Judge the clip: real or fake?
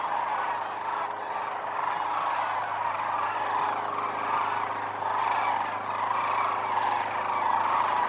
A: real